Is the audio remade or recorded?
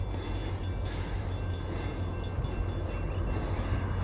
recorded